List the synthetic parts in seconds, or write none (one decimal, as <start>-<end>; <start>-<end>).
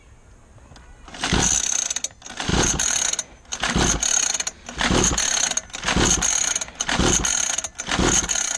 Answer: 2.5-3.4